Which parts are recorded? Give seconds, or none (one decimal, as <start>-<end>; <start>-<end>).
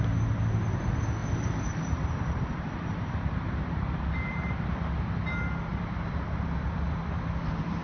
0.0-1.2; 4.7-7.8